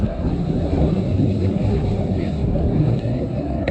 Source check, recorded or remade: remade